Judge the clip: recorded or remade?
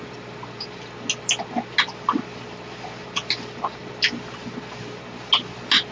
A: recorded